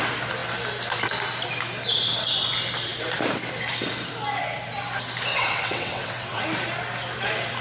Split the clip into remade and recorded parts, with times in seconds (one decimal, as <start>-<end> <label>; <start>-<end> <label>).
0.0-5.3 recorded; 5.3-6.4 remade; 6.4-7.6 recorded